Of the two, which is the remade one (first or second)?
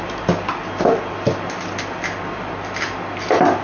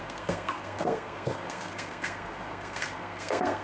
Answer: second